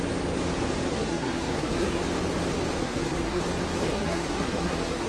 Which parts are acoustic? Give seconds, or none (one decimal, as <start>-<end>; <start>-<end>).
0.0-0.9; 2.0-2.8; 3.4-3.8